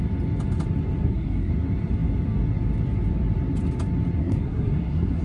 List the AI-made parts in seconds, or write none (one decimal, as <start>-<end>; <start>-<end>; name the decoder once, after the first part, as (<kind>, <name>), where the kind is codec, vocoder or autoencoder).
1.0-1.5 (codec, SNAC); 4.2-5.2